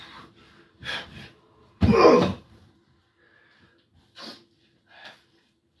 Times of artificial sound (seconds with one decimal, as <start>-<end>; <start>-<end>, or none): none